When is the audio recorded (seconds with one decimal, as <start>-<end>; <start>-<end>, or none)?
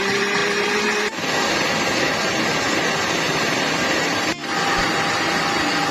0.0-5.9